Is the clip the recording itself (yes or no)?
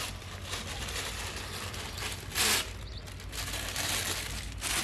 yes